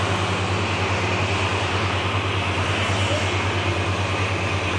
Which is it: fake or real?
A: real